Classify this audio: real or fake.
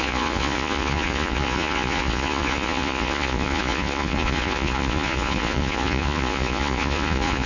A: fake